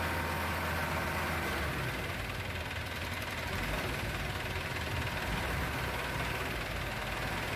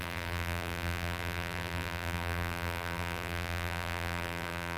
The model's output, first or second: second